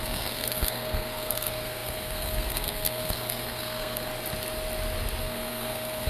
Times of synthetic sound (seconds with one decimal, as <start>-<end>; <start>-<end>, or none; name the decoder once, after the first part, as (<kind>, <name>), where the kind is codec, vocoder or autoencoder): 0.0-4.1 (codec, SNAC); 5.2-6.1